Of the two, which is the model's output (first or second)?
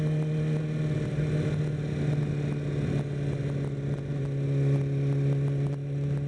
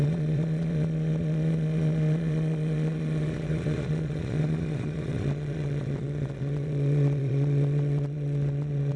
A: second